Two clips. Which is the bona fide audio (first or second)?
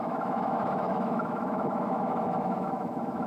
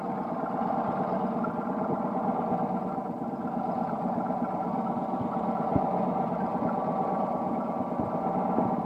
second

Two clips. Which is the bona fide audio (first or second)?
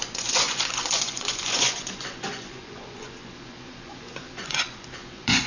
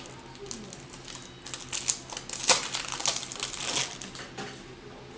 second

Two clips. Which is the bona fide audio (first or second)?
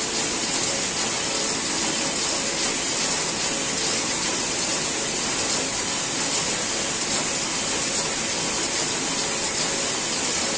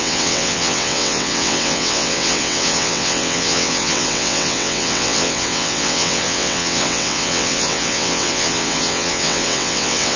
first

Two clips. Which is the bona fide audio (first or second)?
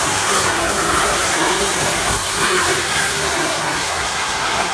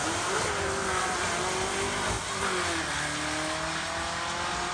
second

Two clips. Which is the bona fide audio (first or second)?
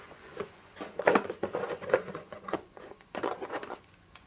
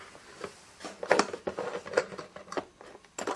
second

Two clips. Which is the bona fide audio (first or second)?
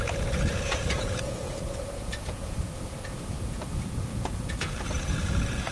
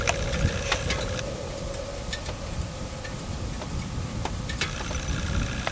second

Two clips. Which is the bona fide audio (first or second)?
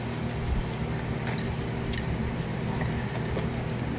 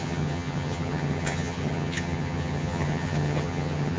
first